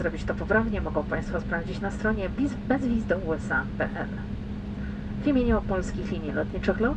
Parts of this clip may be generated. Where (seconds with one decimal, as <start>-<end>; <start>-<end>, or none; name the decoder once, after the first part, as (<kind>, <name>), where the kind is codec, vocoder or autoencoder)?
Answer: none